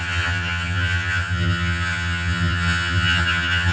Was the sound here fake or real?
fake